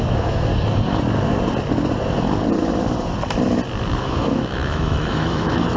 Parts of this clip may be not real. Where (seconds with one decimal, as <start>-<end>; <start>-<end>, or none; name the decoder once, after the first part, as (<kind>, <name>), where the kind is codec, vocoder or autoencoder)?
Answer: 0.0-0.5 (autoencoder, DAC-VAE); 4.0-5.8